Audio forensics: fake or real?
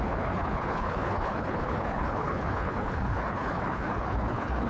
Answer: fake